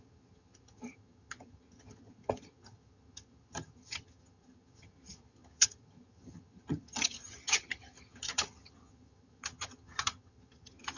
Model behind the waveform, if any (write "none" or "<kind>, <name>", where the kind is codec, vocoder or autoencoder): vocoder, HiFi-GAN